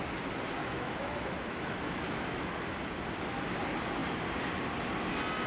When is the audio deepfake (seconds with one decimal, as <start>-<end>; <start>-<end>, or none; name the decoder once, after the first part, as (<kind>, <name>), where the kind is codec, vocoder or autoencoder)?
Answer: 0.6-2.8 (autoencoder, DAC-VAE)